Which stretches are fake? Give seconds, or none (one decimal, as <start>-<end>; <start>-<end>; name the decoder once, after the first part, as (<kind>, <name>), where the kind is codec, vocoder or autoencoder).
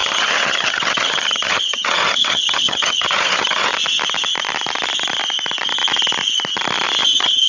0.0-3.7 (vocoder, HiFi-GAN); 7.0-7.5